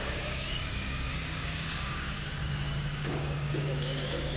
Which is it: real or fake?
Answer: fake